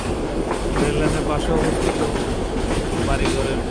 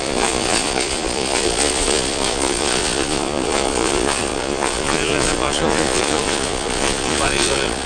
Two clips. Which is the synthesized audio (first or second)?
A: second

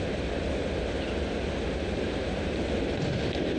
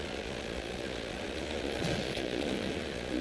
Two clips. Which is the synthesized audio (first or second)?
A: second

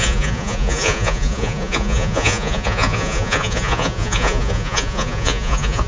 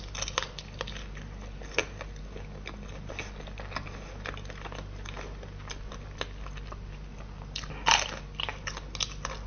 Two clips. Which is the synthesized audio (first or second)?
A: first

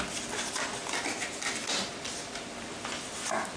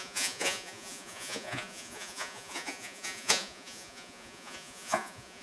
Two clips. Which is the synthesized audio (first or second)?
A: second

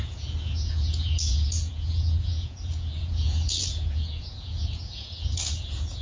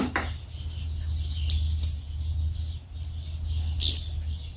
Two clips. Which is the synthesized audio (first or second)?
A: first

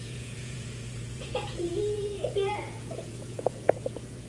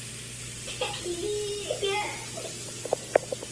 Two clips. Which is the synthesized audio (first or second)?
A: first